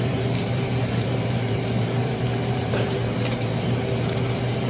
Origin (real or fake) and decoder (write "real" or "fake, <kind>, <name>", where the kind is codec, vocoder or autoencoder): fake, vocoder, BigVGAN v2